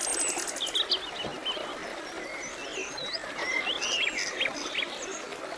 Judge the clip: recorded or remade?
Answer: recorded